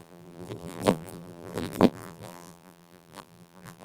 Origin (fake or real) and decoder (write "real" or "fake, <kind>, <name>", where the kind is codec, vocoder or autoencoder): fake, vocoder, BigVGAN v2